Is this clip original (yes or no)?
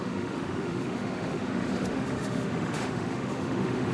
no